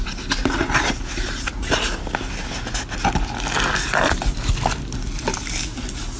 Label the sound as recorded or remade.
recorded